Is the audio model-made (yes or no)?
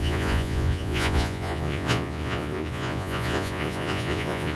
yes